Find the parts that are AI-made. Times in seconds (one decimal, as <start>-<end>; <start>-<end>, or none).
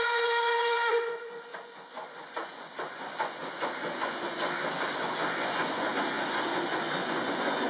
0.0-7.7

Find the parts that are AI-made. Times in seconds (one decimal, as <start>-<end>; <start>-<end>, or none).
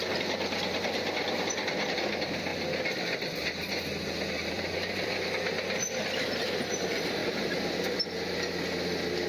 0.0-2.5; 4.3-7.2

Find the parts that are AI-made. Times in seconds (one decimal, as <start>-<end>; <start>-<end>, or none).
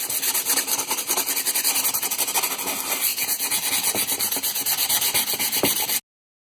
3.1-3.7